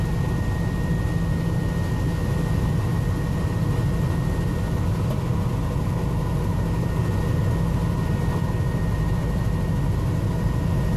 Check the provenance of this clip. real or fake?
real